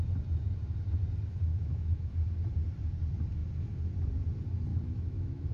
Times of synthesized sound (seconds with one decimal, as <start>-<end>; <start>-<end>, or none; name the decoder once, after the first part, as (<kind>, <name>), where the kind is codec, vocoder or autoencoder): 1.5-2.1 (autoencoder, DAC-VAE); 4.7-5.5